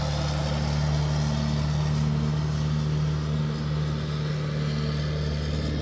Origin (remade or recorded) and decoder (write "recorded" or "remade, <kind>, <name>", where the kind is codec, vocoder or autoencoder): recorded